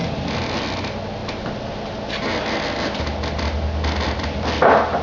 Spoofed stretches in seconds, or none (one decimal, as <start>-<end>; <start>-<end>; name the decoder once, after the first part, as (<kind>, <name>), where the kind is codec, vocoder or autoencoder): none